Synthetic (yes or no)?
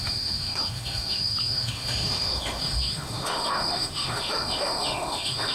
yes